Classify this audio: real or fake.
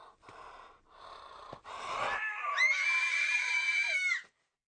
real